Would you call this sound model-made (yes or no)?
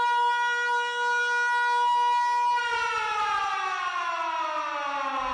no